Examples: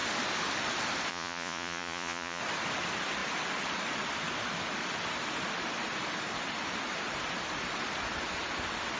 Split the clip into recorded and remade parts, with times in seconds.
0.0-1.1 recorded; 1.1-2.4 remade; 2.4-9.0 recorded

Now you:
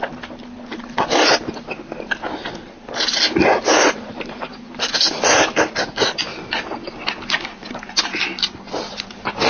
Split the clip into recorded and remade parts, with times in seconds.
0.0-9.5 recorded

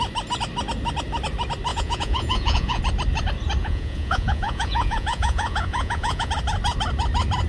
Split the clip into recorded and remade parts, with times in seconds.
0.0-1.7 recorded; 1.7-2.8 remade; 2.8-3.6 recorded; 3.6-6.3 remade; 6.3-7.5 recorded

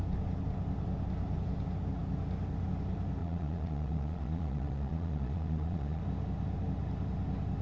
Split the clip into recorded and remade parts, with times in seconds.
0.0-3.2 recorded; 3.2-6.0 remade; 6.0-7.6 recorded

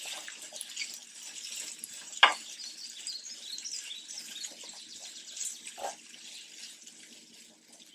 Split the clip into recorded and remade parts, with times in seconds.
0.0-7.9 recorded

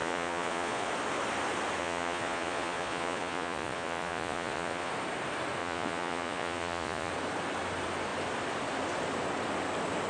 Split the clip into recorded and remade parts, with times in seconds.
0.0-0.9 remade; 0.9-1.8 recorded; 1.8-4.9 remade; 4.9-5.6 recorded; 5.6-7.1 remade; 7.1-10.1 recorded